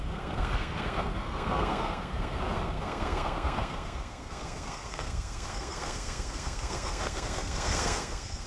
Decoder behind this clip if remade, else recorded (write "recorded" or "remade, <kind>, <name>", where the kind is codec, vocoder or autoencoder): remade, codec, SNAC